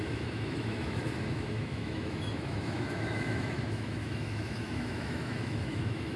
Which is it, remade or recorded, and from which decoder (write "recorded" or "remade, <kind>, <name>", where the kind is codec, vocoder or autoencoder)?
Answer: remade, autoencoder, DAC-VAE